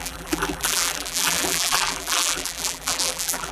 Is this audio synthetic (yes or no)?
yes